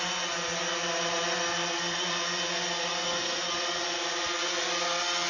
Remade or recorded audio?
recorded